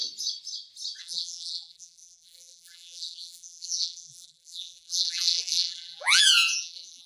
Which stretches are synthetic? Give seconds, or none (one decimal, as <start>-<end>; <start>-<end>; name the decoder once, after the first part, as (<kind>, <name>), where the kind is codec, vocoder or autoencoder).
1.0-7.1 (vocoder, BigVGAN v2)